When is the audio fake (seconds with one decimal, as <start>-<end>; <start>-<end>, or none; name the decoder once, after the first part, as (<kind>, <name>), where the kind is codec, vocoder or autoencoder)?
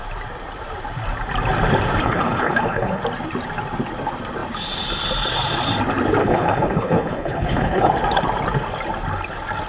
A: 2.0-3.0 (codec, HILCodec); 6.2-7.9